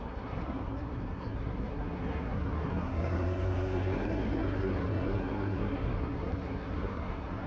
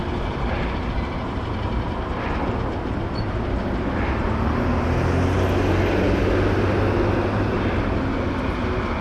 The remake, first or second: first